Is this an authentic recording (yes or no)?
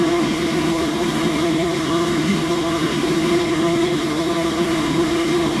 no